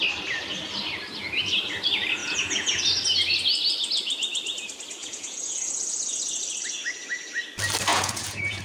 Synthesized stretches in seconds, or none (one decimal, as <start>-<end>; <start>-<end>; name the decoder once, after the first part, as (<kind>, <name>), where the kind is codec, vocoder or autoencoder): 2.2-2.8 (vocoder, Vocos); 5.0-6.2; 7.9-8.6

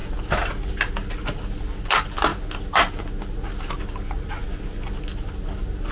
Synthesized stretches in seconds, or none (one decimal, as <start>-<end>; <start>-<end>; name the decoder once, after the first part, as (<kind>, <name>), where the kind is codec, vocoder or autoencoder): none

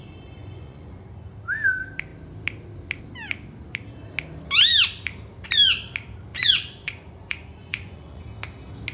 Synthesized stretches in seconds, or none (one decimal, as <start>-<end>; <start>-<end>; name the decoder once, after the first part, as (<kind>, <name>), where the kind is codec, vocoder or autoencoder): 0.4-1.0 (vocoder, Vocos); 6.3-8.2

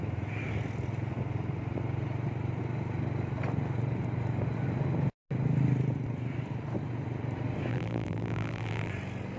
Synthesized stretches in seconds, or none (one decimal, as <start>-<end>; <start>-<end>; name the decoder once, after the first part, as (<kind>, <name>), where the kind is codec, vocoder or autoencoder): 7.7-8.9 (vocoder, BigVGAN v2)